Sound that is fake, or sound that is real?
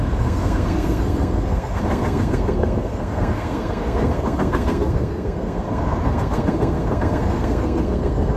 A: fake